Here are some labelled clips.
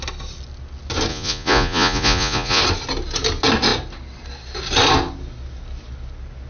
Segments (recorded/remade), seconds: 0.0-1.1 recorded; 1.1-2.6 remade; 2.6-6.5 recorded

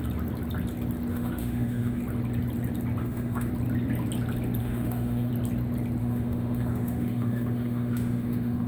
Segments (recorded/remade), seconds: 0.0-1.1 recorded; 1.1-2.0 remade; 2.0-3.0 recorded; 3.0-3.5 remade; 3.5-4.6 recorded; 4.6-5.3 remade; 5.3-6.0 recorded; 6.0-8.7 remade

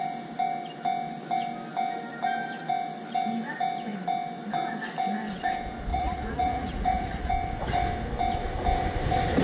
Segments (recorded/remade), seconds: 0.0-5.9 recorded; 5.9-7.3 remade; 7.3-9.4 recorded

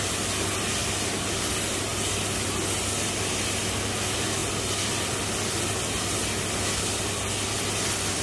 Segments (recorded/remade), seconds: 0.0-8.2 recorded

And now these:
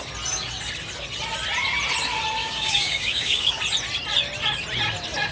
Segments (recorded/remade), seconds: 0.0-2.4 recorded; 2.4-3.6 remade; 3.6-5.3 recorded

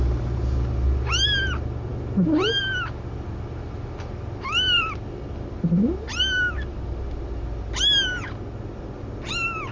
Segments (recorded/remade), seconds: 0.0-9.7 recorded